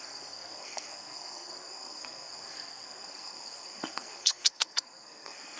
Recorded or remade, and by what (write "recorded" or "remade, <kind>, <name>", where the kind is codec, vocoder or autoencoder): remade, codec, SNAC